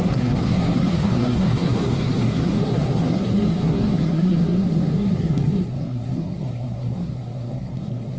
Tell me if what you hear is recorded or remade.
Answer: remade